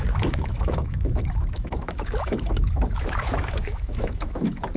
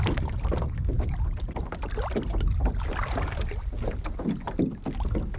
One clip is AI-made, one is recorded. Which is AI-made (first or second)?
first